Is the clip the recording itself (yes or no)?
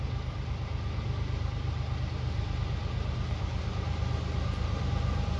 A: yes